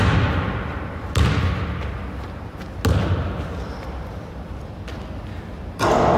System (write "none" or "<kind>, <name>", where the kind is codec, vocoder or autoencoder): none